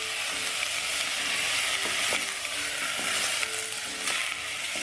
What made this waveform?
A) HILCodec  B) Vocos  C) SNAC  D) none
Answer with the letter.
D